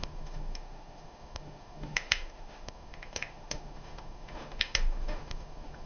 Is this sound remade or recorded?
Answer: remade